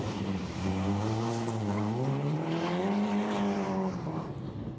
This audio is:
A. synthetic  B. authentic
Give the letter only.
A